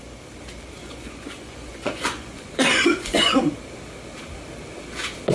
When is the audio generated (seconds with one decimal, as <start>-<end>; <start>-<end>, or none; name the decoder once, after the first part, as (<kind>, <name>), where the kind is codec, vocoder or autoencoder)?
0.8-3.4 (vocoder, Vocos)